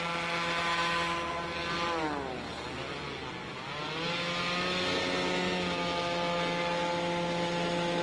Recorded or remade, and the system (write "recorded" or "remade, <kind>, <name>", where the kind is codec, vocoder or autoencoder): recorded